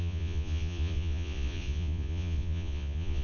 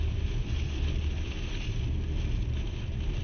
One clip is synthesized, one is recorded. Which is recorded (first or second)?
second